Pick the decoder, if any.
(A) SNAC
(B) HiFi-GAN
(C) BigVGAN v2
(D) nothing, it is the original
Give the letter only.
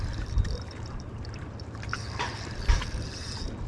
C